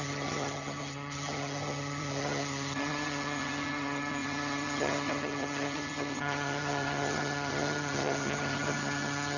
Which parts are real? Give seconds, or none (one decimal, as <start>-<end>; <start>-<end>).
none

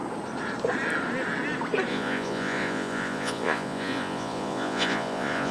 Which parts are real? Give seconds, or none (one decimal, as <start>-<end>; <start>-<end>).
0.0-1.9

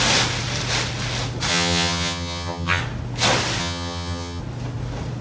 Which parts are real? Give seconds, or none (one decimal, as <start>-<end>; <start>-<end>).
0.0-1.5; 2.8-3.6; 4.4-5.2

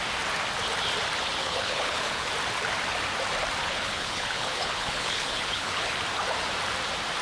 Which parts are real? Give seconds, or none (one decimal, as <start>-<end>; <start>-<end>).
0.0-1.4; 2.3-3.6; 6.0-7.2

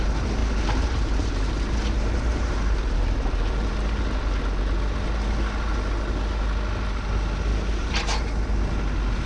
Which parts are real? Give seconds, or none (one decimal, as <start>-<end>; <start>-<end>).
0.0-0.4; 3.7-7.5; 8.2-9.3

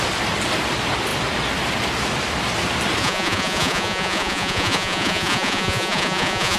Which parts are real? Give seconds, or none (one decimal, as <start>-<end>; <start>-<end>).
0.0-3.0

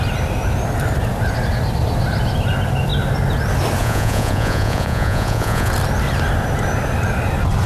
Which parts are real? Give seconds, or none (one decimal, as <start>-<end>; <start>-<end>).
0.0-3.8; 5.7-7.7

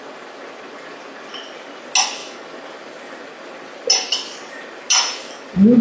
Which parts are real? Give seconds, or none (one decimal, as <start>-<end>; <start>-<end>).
0.0-5.8